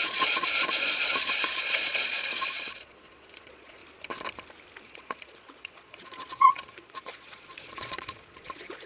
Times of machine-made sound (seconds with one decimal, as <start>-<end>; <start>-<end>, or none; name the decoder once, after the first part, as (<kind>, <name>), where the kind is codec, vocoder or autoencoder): 0.0-3.8 (vocoder, Vocos); 4.8-8.9